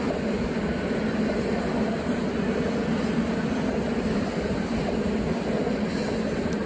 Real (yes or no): yes